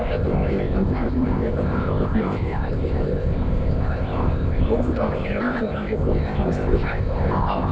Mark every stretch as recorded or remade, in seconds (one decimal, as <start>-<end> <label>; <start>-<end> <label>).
0.0-7.7 remade